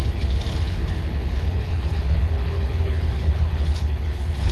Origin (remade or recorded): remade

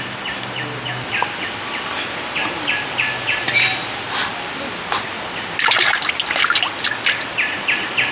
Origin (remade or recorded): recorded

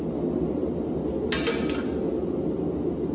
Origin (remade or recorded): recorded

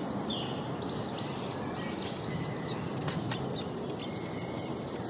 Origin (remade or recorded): recorded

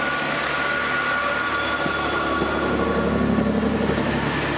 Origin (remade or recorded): recorded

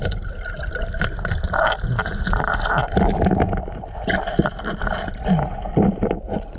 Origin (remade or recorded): recorded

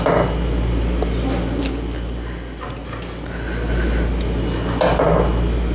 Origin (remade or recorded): recorded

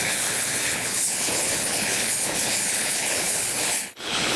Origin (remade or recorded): remade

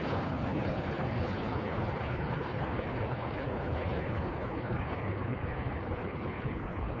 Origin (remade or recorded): remade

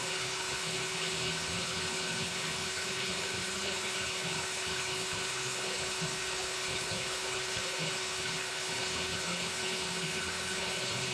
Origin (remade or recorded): remade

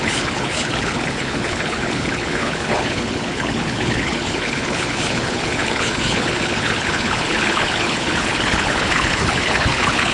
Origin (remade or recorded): remade